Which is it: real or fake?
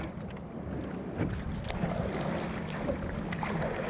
real